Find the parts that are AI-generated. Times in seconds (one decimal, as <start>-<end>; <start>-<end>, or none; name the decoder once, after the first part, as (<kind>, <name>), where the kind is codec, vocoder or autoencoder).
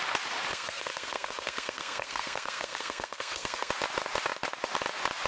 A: 0.5-3.7 (codec, SNAC)